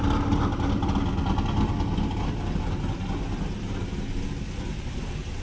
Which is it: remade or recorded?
recorded